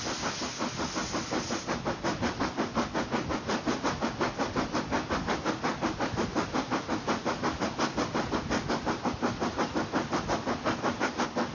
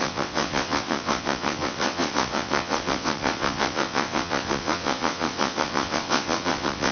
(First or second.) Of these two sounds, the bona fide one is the first